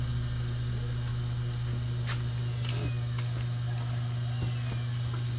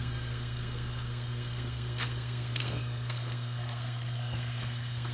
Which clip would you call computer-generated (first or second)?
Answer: second